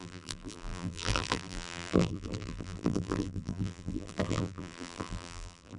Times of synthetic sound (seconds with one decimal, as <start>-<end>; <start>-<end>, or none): 0.0-5.8